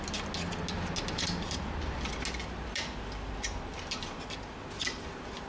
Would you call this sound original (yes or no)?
yes